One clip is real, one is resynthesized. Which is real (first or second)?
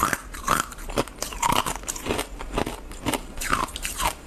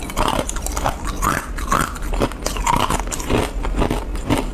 second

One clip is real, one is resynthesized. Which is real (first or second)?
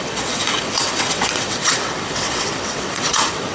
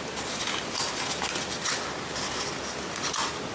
second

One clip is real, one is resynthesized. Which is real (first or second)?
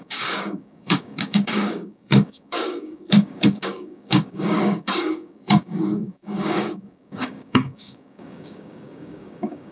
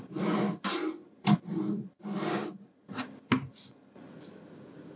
second